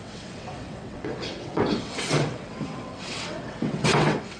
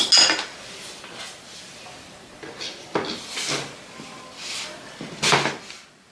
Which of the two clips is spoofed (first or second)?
first